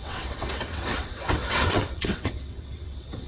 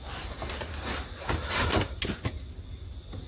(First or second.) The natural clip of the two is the second